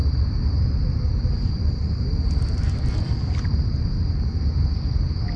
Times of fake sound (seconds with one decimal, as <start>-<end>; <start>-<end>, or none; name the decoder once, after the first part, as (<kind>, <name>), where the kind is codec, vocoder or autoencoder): none